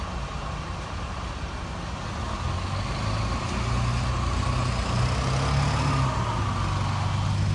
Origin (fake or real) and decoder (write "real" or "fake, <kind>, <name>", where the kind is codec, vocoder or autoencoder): real